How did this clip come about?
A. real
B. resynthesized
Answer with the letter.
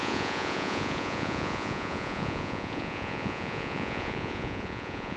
B